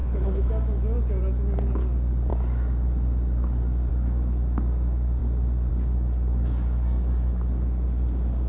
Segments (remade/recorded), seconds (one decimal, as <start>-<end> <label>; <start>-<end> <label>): 0.0-0.5 remade; 0.5-8.5 recorded